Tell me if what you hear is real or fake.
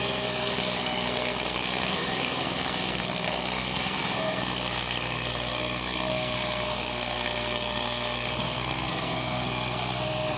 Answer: fake